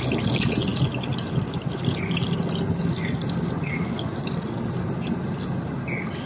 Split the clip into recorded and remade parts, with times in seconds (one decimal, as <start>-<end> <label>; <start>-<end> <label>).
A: 0.0-6.3 recorded